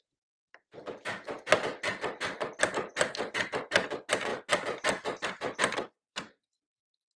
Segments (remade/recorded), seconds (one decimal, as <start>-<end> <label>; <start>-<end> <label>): 0.0-2.9 recorded; 2.9-3.5 remade; 3.5-4.3 recorded; 4.3-6.2 remade; 6.2-7.2 recorded